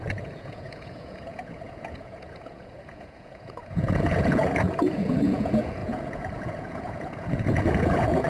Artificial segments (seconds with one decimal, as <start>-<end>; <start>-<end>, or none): 0.0-8.3